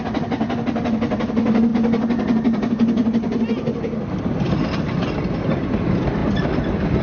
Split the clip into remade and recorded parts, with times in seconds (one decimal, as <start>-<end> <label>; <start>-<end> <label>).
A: 0.0-7.0 recorded